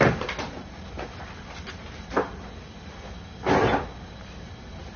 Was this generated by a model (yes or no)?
no